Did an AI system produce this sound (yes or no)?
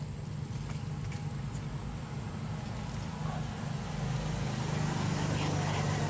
no